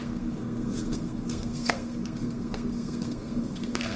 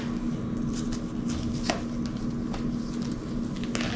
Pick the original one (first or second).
second